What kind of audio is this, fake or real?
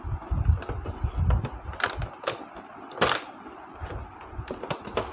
real